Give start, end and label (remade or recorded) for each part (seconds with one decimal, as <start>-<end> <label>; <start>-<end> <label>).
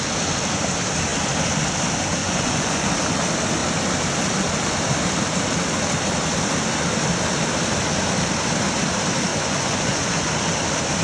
0.0-2.2 recorded; 2.2-2.9 remade; 2.9-9.3 recorded; 9.3-10.3 remade; 10.3-11.0 recorded